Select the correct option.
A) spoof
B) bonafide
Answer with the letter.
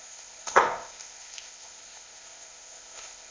A